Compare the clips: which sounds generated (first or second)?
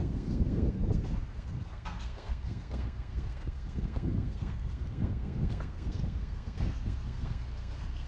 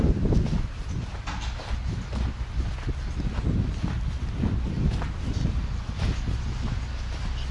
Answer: first